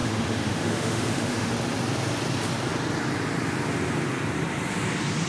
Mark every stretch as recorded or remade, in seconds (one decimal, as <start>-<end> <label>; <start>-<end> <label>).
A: 0.0-1.5 remade; 1.5-5.3 recorded

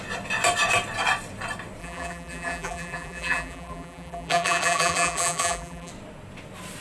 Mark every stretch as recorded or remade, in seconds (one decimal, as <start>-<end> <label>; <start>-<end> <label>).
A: 0.0-1.8 recorded; 1.8-5.9 remade; 5.9-6.8 recorded

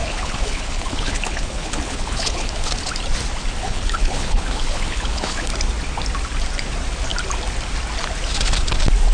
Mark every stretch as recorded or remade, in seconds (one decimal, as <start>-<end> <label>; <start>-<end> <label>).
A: 0.0-2.7 remade; 2.7-3.6 recorded; 3.6-5.5 remade; 5.5-9.1 recorded

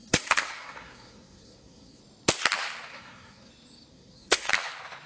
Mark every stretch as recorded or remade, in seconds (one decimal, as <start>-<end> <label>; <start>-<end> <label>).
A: 0.0-2.0 remade; 2.0-2.9 recorded; 2.9-3.5 remade; 3.5-3.9 recorded; 3.9-4.5 remade; 4.5-5.1 recorded

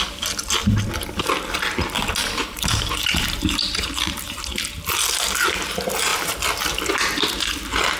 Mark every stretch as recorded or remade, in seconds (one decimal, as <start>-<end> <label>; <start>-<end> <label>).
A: 0.0-2.2 recorded; 2.2-4.4 remade; 4.4-8.0 recorded

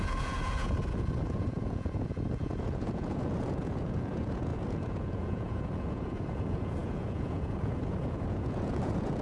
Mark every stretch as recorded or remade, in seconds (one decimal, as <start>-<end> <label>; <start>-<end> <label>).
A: 0.0-9.2 remade

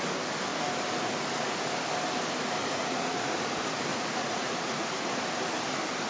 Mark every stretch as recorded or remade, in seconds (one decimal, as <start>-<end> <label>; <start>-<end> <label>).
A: 0.0-2.6 recorded; 2.6-3.4 remade; 3.4-3.9 recorded; 3.9-5.3 remade; 5.3-6.1 recorded